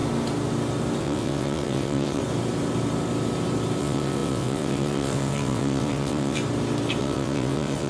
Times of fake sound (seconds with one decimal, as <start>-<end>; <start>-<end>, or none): 1.0-2.2; 3.8-6.4; 7.0-7.9